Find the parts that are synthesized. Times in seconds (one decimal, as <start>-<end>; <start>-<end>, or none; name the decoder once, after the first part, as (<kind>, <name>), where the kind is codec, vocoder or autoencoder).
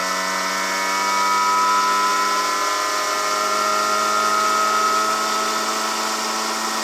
none